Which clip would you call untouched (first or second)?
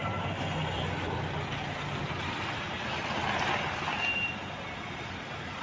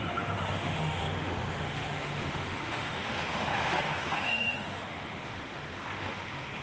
first